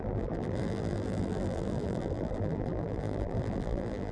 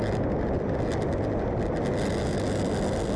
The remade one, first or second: first